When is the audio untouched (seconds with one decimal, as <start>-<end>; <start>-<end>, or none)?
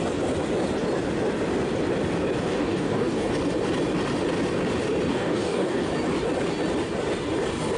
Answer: 0.0-2.5; 3.3-5.1; 5.9-7.8